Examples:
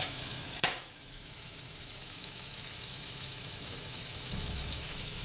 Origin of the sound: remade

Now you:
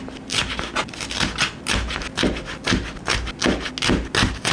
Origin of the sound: recorded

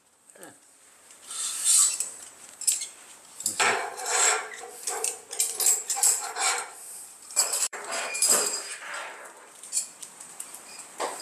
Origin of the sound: remade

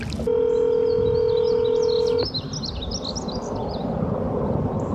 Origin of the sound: recorded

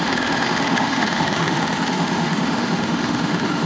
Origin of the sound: remade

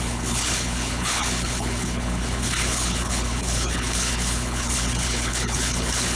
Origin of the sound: remade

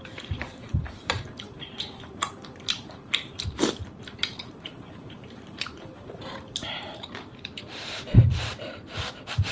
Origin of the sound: remade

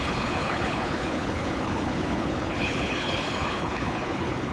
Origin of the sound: remade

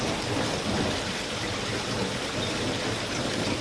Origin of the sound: recorded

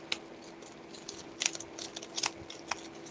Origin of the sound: recorded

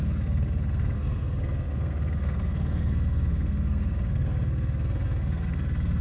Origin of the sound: remade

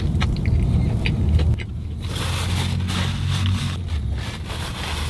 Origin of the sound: recorded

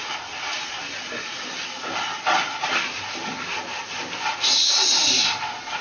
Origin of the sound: recorded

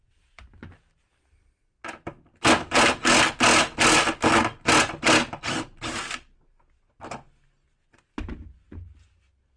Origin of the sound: recorded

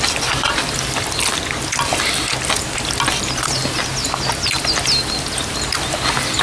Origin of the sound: recorded